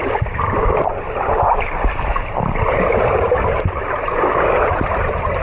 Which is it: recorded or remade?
remade